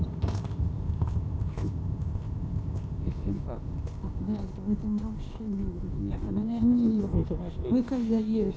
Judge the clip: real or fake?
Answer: fake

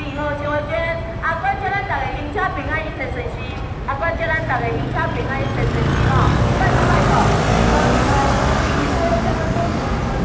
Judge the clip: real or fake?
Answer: real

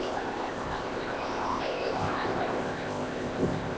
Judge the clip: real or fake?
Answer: fake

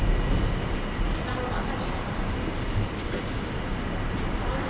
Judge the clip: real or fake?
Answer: real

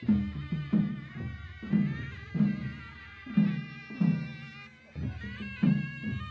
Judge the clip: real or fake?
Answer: real